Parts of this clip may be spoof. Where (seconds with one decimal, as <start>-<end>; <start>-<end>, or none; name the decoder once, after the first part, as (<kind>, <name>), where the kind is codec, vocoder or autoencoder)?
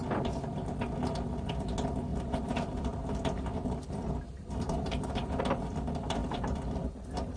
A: 2.1-5.4 (vocoder, BigVGAN v2); 6.2-7.4